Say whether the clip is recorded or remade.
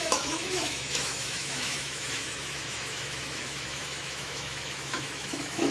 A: remade